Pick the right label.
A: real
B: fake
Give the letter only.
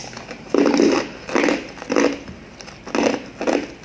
A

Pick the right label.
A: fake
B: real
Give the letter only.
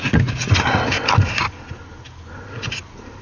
B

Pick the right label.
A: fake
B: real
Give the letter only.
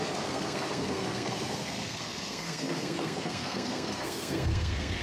A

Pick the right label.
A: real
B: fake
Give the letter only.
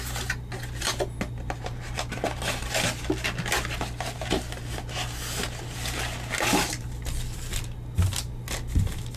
A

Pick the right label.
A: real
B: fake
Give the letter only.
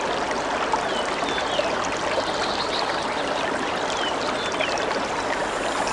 A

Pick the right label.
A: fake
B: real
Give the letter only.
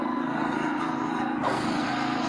A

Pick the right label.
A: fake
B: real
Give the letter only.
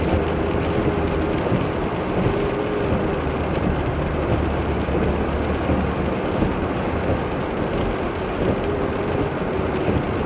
B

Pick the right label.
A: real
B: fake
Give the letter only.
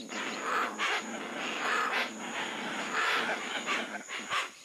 A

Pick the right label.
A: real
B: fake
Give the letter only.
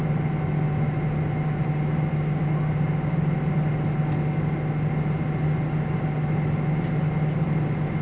A